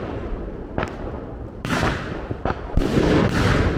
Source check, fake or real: real